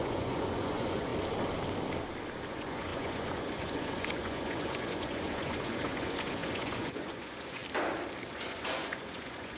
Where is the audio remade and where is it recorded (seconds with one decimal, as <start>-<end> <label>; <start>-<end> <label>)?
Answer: 0.0-1.1 remade; 1.1-2.5 recorded; 2.5-7.6 remade; 7.6-8.3 recorded; 8.3-9.6 remade